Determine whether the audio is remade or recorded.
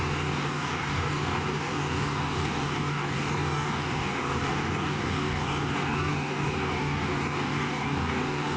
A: remade